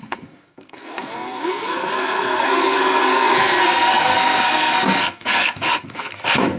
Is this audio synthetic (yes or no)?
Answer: yes